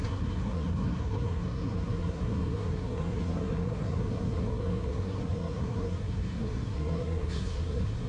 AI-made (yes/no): yes